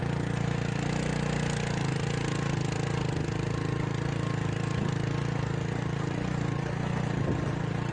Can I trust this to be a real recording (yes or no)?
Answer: yes